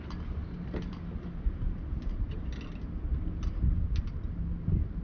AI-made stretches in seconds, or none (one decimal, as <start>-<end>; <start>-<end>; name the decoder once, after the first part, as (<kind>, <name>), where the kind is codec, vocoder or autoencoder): none